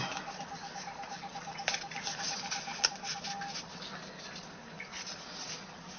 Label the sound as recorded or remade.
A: recorded